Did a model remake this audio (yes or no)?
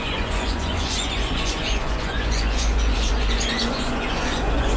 yes